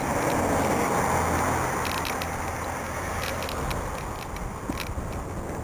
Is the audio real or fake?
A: real